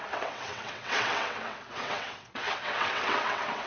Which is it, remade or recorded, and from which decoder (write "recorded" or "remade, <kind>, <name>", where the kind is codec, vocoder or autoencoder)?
remade, vocoder, WaveNeXt